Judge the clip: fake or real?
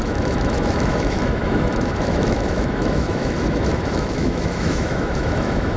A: fake